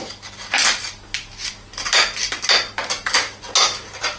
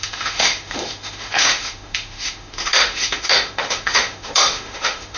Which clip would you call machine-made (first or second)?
second